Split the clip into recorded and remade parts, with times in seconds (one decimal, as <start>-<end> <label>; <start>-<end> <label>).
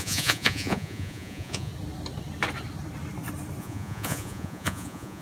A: 0.0-1.7 remade; 1.7-3.6 recorded; 3.6-5.2 remade